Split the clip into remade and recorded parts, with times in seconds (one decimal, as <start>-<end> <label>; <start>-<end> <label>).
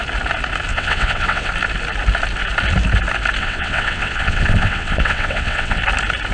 0.0-0.7 recorded; 0.7-1.5 remade; 1.5-3.4 recorded; 3.4-5.8 remade; 5.8-6.3 recorded